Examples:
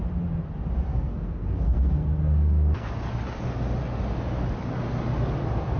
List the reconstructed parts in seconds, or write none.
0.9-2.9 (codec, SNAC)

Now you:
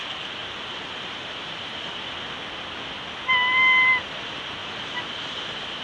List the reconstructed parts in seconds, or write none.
none

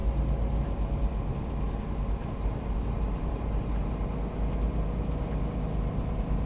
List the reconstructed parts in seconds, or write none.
none

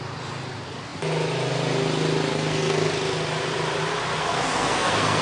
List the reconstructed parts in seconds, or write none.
2.3-2.9 (codec, SNAC); 4.1-5.2

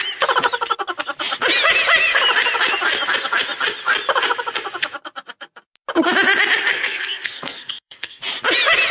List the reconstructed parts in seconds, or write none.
6.7-8.2 (codec, SNAC)

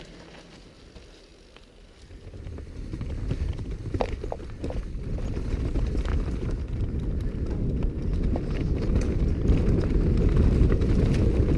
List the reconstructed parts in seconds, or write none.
none